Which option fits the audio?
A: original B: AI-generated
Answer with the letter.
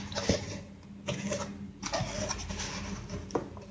A